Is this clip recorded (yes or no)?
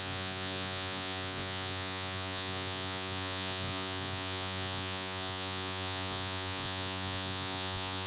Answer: no